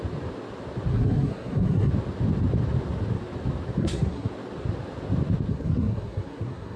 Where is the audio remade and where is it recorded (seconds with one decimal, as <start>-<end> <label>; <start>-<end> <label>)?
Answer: 0.0-0.9 recorded; 0.9-1.9 remade; 1.9-3.8 recorded; 3.8-4.3 remade; 4.3-5.5 recorded; 5.5-6.8 remade